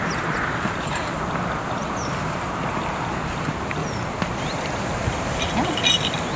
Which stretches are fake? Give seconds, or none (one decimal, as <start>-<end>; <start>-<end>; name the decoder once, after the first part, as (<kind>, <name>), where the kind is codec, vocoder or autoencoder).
none